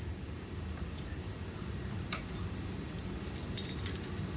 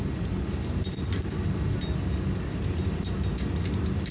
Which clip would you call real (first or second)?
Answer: second